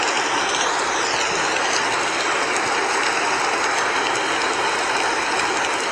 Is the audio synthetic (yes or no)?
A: no